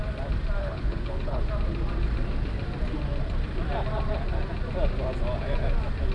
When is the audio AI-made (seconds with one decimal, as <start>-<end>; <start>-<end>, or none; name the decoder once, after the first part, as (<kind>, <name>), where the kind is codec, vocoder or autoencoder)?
0.6-1.5 (codec, HILCodec)